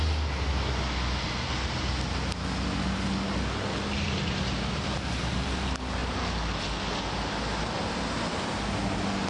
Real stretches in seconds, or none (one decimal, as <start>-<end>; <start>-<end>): 0.0-9.3